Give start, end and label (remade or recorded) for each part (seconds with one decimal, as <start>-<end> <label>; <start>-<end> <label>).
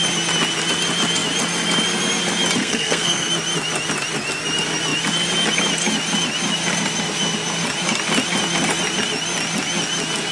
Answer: 0.0-2.6 recorded; 2.6-3.3 remade; 3.3-10.3 recorded